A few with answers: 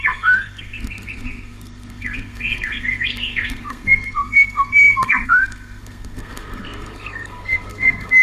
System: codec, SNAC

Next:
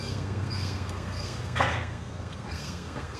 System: codec, SNAC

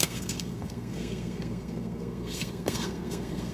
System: codec, SNAC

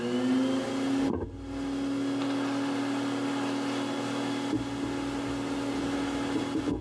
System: none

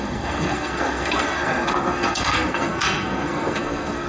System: codec, SNAC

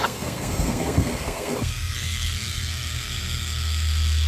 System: codec, SNAC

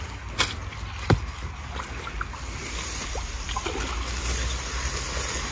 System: none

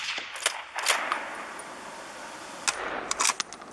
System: none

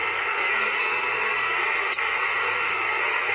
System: codec, SNAC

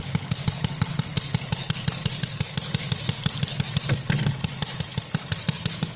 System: none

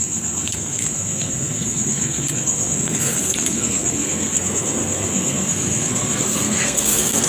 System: codec, SNAC